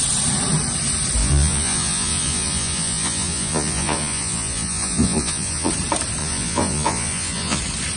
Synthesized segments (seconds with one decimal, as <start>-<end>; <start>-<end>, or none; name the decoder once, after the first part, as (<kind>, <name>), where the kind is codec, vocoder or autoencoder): 1.2-5.7 (vocoder, Vocos); 6.2-7.6